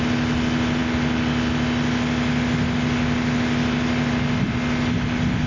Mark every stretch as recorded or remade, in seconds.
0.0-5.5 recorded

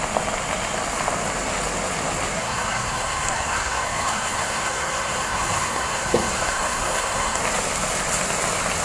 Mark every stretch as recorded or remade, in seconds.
0.0-2.4 recorded; 2.4-7.4 remade; 7.4-8.8 recorded

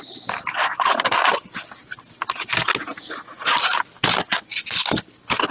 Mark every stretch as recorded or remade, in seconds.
0.0-5.5 recorded

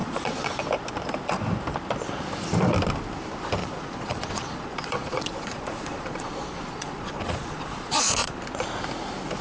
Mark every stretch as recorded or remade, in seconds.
0.0-0.6 remade; 0.6-3.6 recorded; 3.6-8.4 remade; 8.4-9.4 recorded

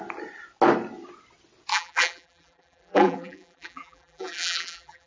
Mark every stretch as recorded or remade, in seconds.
0.0-1.7 recorded; 1.7-5.1 remade

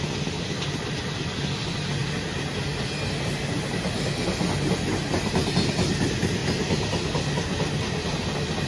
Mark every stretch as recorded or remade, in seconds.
0.0-8.7 recorded

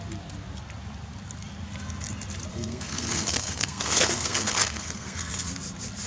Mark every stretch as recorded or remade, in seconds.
0.0-2.5 recorded; 2.5-5.5 remade; 5.5-6.1 recorded

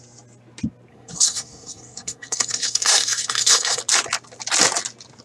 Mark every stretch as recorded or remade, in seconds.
0.0-0.9 recorded; 0.9-3.8 remade; 3.8-5.2 recorded